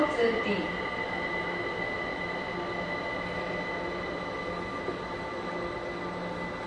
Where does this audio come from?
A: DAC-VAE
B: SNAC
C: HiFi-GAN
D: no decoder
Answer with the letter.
D